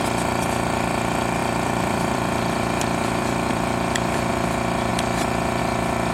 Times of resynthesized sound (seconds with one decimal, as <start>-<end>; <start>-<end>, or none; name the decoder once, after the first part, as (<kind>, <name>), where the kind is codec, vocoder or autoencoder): 1.4-4.3 (vocoder, BigVGAN v2)